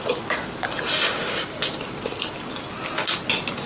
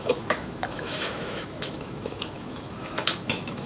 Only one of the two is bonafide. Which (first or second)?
first